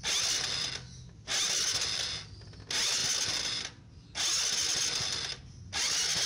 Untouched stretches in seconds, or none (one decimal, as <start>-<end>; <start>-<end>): 0.0-6.3